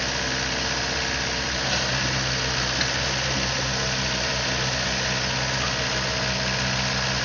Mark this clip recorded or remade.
recorded